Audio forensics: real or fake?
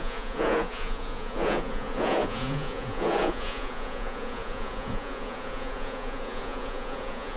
fake